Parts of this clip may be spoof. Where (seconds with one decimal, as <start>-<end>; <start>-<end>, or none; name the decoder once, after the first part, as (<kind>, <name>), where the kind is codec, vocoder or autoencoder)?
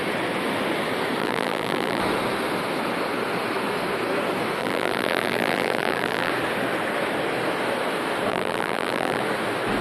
1.2-2.0 (vocoder, BigVGAN v2); 4.6-6.3; 8.3-9.2